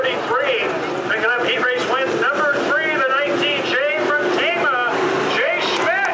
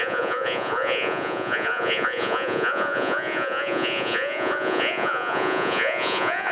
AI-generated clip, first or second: second